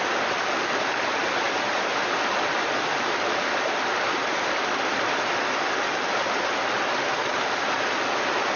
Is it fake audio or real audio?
real